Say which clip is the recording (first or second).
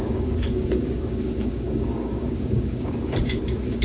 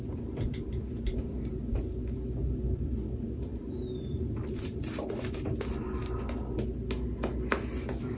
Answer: second